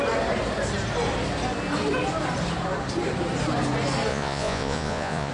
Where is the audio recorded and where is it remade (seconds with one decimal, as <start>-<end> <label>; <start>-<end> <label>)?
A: 0.0-4.1 recorded; 4.1-5.3 remade